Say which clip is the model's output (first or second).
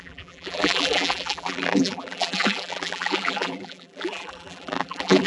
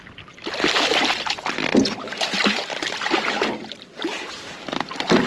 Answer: first